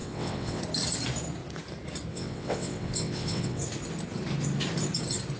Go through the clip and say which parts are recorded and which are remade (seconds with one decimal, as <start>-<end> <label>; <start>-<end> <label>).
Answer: 0.0-0.6 remade; 0.6-2.1 recorded; 2.1-3.6 remade; 3.6-5.4 recorded